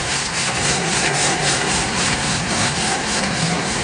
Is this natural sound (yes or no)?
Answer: no